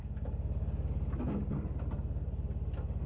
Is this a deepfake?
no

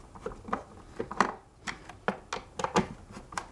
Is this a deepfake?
no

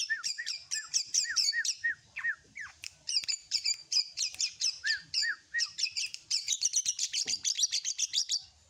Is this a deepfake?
yes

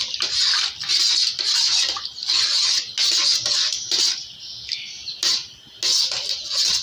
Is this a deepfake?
no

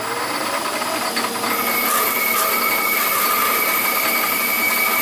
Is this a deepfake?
no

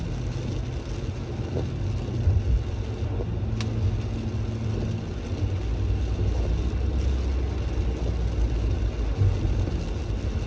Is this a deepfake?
no